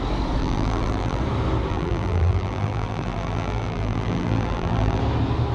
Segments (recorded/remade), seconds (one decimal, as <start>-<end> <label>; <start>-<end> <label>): 0.0-0.4 recorded; 0.4-1.2 remade; 1.2-1.7 recorded; 1.7-5.0 remade; 5.0-5.5 recorded

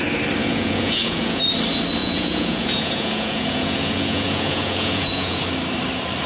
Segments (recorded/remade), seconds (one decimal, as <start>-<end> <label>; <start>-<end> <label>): 0.0-0.4 recorded; 0.4-1.4 remade; 1.4-2.0 recorded; 2.0-5.4 remade; 5.4-6.3 recorded

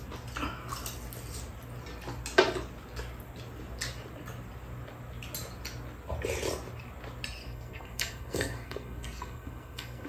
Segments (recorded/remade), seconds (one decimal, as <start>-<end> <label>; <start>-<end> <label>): 0.0-7.4 recorded; 7.4-10.1 remade

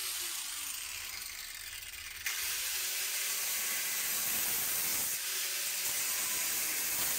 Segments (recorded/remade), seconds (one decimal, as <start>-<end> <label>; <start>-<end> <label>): 0.0-7.2 recorded

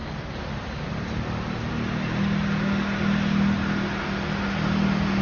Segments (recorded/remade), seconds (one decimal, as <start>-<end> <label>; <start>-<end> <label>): 0.0-5.2 recorded

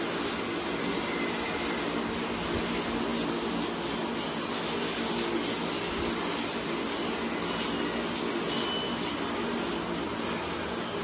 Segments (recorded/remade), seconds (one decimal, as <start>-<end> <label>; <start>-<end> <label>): 0.0-11.0 recorded

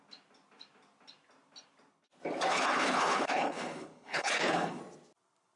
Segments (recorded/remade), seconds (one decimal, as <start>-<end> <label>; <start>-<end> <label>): 0.0-2.5 recorded; 2.5-4.8 remade; 4.8-5.6 recorded

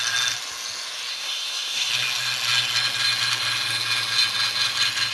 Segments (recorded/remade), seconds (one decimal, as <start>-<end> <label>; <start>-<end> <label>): 0.0-1.1 recorded; 1.1-1.9 remade; 1.9-5.1 recorded